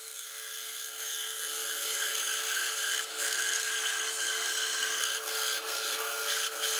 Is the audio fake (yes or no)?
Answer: yes